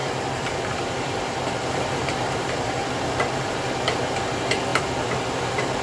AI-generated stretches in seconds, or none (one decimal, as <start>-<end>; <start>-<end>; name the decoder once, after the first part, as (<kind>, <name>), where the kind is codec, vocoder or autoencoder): 0.0-3.5 (vocoder, BigVGAN v2); 4.7-5.3